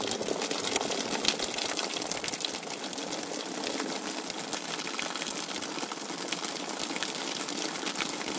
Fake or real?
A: real